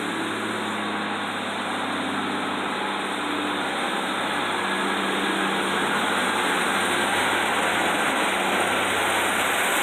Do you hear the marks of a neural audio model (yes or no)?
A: no